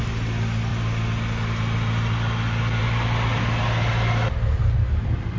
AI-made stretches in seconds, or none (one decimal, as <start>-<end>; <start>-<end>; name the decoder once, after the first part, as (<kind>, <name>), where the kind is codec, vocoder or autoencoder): none